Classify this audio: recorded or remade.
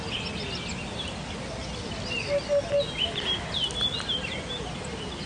recorded